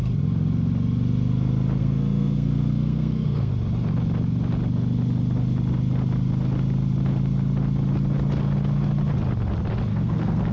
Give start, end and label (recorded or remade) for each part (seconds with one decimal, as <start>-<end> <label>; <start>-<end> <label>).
0.0-1.8 recorded; 1.8-3.5 remade; 3.5-9.9 recorded; 9.9-10.5 remade